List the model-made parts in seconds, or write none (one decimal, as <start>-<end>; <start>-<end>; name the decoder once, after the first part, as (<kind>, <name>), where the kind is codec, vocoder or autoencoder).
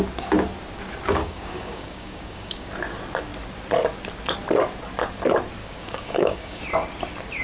1.2-2.7 (codec, DAC); 5.6-6.6